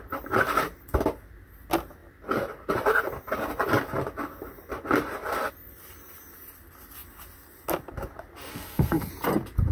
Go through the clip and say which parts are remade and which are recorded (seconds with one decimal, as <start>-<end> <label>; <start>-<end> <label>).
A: 0.0-8.5 recorded; 8.5-9.1 remade; 9.1-9.7 recorded